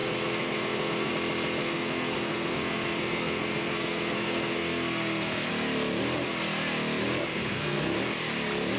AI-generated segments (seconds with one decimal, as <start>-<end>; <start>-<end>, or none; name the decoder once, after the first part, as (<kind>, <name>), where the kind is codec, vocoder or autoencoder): 0.0-1.1 (codec, SNAC); 1.6-5.5; 7.3-7.8

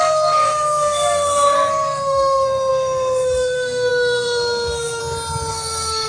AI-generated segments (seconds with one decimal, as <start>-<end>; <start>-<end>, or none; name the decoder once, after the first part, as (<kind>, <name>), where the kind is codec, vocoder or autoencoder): 0.0-5.0 (codec, SNAC); 5.5-6.1

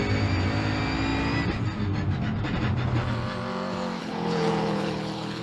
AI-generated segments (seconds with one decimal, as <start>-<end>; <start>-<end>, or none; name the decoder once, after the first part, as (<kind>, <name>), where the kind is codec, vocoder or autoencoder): 4.0-5.4 (codec, HILCodec)

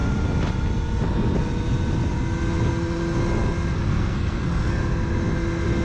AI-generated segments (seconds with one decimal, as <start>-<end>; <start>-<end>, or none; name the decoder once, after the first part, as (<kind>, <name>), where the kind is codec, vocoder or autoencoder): 3.9-4.8 (codec, SNAC)

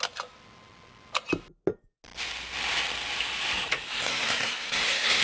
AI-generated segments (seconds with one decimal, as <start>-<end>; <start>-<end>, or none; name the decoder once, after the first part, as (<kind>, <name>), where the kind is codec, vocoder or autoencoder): 3.9-5.2 (codec, SNAC)

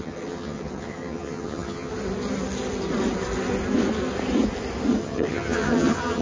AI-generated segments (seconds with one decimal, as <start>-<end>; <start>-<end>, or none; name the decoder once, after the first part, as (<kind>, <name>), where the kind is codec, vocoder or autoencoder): 0.0-1.9 (vocoder, HiFi-GAN); 5.0-6.2